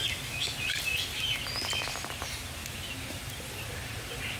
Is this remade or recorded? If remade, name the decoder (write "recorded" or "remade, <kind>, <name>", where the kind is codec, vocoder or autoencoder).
recorded